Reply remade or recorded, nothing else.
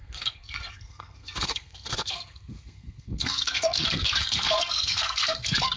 remade